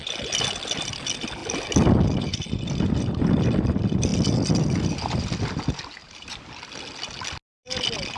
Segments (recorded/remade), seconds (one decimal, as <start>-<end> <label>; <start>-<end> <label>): 0.0-6.0 recorded; 6.0-6.5 remade; 6.5-8.2 recorded